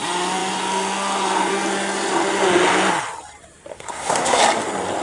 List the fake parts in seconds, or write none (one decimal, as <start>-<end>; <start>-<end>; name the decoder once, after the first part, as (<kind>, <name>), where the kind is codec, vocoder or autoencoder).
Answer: 3.7-4.4 (codec, SNAC)